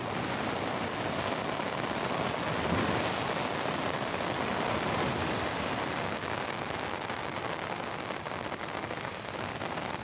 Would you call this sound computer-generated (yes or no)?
no